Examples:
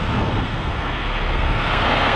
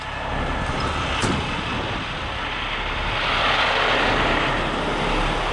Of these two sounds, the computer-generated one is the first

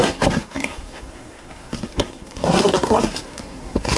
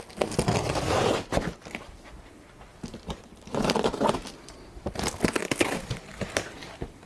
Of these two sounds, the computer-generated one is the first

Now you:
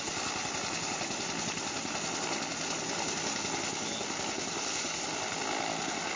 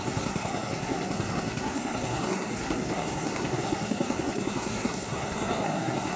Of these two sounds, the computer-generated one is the second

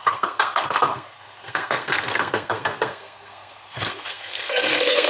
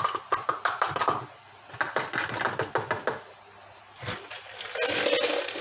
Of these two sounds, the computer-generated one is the first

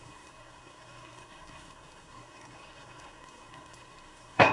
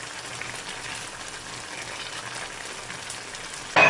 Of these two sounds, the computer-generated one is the first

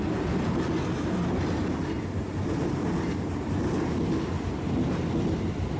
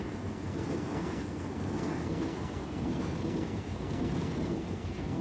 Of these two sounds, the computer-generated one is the second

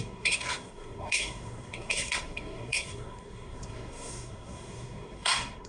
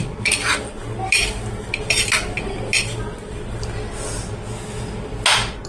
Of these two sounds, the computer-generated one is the first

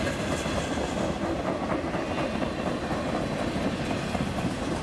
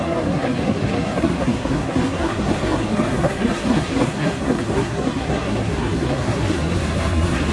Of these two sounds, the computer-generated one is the second